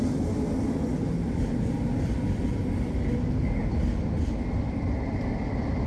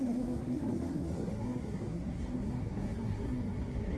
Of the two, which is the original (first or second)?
first